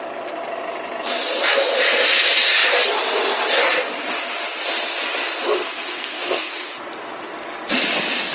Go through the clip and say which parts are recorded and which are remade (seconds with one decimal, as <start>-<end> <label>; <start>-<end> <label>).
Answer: 0.0-5.6 recorded; 5.6-6.7 remade; 6.7-8.3 recorded